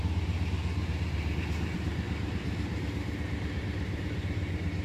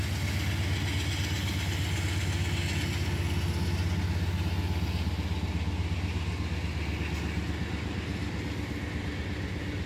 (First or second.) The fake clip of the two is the first